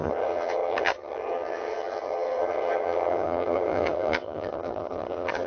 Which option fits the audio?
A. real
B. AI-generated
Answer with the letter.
B